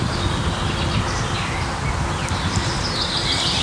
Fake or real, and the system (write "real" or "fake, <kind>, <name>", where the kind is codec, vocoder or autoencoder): real